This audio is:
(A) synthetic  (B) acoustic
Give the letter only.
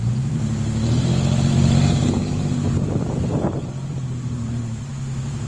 A